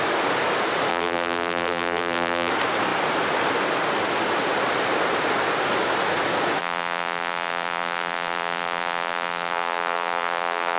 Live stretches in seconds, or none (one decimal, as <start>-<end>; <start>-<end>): 0.0-0.9; 2.5-6.6